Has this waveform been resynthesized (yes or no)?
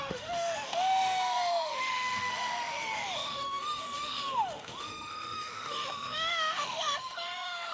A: yes